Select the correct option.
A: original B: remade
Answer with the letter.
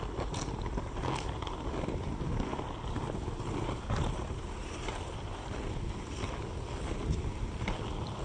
A